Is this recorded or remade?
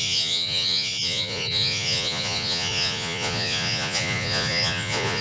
remade